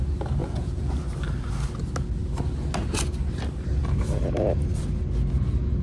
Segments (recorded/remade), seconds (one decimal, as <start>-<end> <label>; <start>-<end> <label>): 0.0-0.4 recorded; 0.4-0.9 remade; 0.9-5.8 recorded

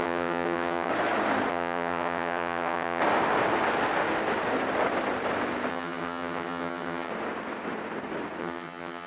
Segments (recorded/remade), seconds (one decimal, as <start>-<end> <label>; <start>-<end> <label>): 0.0-0.9 remade; 0.9-1.5 recorded; 1.5-3.0 remade; 3.0-5.7 recorded; 5.7-7.1 remade; 7.1-8.4 recorded; 8.4-9.1 remade

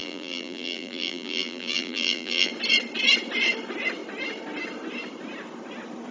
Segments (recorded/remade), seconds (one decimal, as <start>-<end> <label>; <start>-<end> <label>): 0.0-2.5 remade; 2.5-6.1 recorded

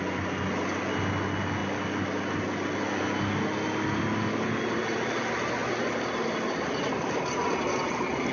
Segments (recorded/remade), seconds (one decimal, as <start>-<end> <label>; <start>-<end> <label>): 0.0-8.3 recorded

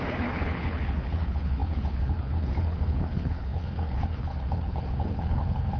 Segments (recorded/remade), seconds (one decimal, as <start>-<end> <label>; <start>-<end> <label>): 0.0-5.8 remade

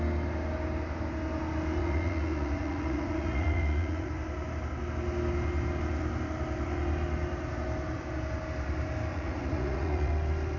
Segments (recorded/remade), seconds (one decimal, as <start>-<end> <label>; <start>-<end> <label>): 0.0-1.8 recorded; 1.8-4.1 remade; 4.1-9.1 recorded; 9.1-10.1 remade; 10.1-10.6 recorded

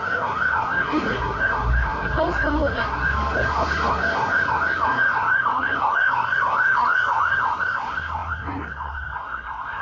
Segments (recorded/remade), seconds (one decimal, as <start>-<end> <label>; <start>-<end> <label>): 0.0-9.8 remade